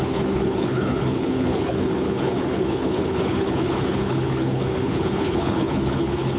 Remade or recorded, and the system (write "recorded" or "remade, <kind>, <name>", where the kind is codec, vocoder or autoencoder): remade, codec, HILCodec